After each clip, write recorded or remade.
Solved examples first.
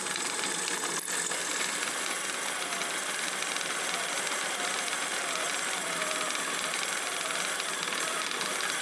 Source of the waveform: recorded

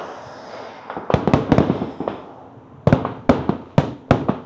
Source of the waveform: recorded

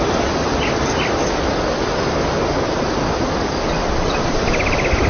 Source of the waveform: recorded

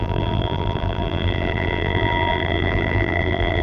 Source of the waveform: remade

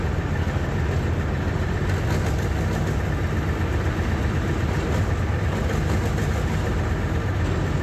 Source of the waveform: recorded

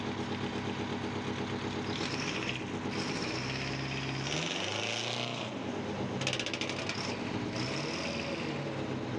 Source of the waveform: recorded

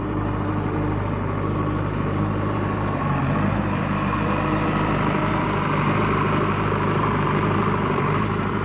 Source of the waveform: remade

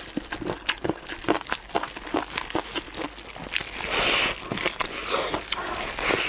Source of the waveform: recorded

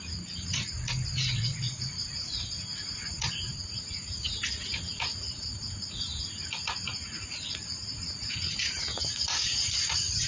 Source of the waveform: remade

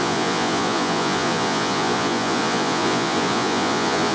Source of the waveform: remade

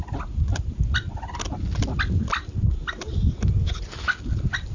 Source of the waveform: recorded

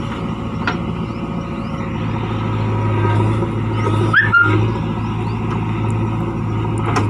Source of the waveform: recorded